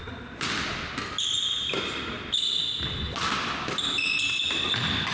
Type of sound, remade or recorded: recorded